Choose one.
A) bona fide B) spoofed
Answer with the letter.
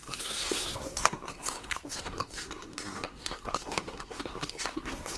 B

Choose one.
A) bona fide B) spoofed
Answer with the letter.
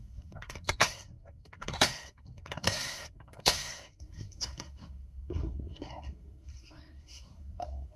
B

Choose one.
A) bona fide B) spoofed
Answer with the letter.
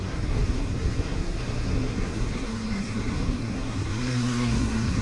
B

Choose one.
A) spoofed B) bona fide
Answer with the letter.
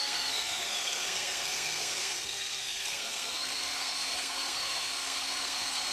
A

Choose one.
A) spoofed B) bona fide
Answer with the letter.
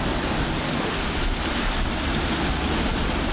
B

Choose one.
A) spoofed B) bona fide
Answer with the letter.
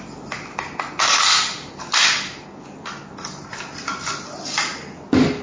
B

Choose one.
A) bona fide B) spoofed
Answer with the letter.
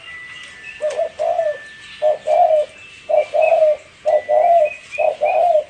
A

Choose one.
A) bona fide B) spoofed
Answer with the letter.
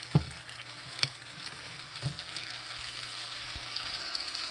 B